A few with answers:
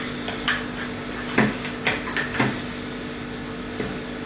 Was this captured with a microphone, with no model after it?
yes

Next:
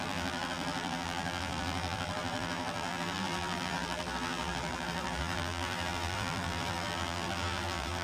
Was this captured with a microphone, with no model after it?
no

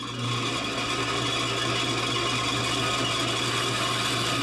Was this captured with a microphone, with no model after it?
yes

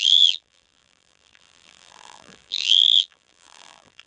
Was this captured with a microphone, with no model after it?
no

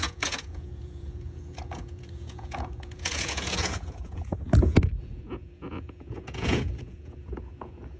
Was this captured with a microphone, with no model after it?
no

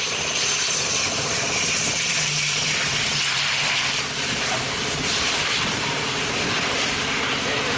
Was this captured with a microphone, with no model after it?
no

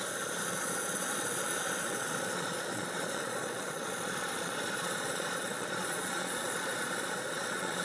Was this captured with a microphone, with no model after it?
no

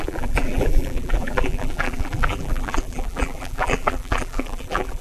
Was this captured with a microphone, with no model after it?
no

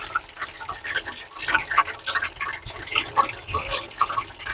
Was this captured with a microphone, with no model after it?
yes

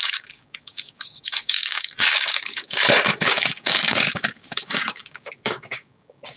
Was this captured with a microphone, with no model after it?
no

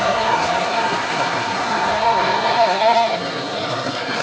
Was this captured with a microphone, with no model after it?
no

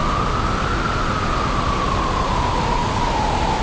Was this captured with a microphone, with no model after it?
yes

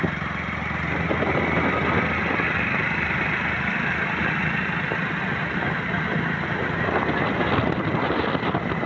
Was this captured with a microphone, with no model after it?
yes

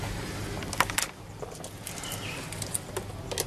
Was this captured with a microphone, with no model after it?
yes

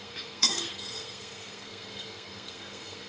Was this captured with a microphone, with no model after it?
no